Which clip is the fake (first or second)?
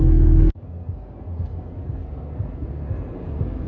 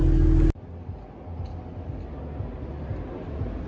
first